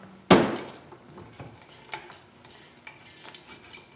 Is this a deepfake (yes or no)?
no